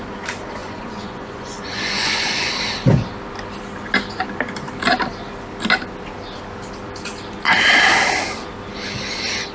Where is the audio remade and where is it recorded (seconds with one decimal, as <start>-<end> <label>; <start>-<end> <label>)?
0.0-0.6 recorded; 0.6-2.5 remade; 2.5-9.5 recorded

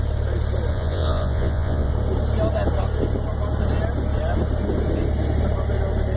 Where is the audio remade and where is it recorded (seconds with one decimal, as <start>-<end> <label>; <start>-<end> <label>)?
0.0-0.7 recorded; 0.7-1.9 remade; 1.9-6.2 recorded